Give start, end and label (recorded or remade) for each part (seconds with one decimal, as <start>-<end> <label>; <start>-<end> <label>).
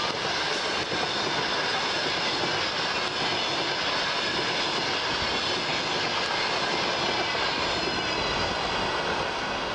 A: 0.0-9.7 recorded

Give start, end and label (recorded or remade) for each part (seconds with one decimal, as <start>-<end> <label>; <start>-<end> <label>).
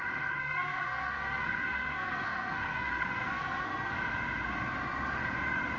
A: 0.0-0.4 recorded; 0.4-3.9 remade; 3.9-5.8 recorded